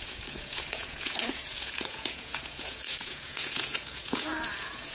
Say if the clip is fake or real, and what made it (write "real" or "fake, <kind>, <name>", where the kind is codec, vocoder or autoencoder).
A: fake, vocoder, Vocos